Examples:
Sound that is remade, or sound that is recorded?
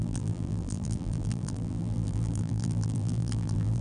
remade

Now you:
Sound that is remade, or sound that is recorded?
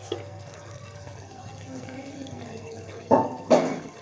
remade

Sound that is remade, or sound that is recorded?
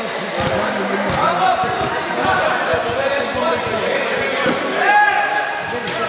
recorded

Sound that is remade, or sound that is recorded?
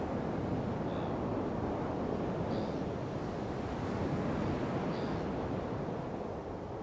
recorded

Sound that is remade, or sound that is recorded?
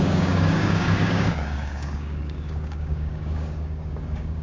remade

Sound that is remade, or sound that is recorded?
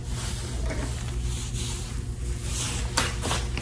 recorded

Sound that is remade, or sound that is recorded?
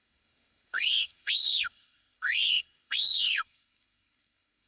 remade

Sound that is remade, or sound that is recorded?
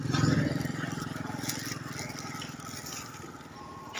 recorded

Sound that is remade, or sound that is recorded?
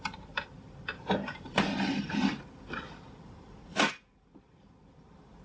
remade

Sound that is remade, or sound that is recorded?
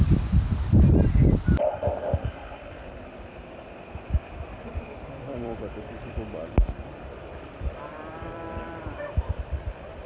remade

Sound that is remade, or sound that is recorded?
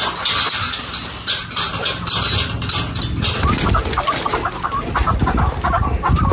recorded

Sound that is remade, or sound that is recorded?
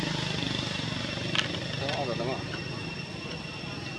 recorded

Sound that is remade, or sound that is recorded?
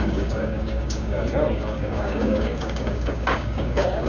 remade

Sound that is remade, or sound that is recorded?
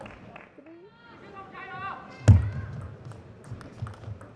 recorded